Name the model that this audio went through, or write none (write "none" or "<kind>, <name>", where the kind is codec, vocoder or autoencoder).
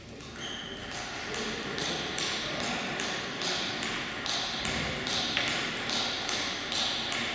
none